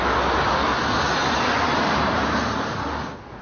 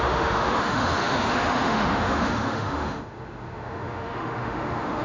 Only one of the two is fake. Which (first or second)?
second